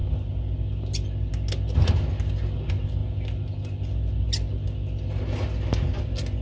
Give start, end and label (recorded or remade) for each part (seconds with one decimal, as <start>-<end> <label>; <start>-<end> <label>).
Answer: 0.0-6.4 recorded